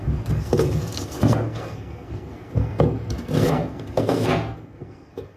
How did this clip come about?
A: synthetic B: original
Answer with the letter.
A